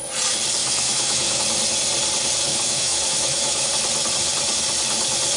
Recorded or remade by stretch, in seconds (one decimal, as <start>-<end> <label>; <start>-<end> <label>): 0.0-0.6 recorded; 0.6-1.4 remade; 1.4-2.5 recorded; 2.5-3.7 remade; 3.7-5.4 recorded